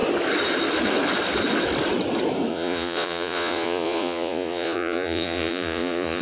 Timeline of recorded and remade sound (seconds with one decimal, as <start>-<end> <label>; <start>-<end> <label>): 0.0-2.5 recorded; 2.5-6.2 remade